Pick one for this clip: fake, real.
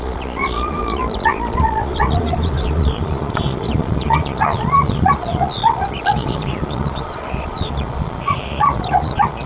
fake